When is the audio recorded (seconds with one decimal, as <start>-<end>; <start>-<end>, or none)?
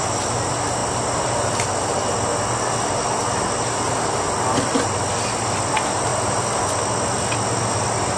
0.0-8.2